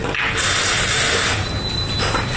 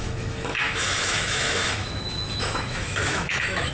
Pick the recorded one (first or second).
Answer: first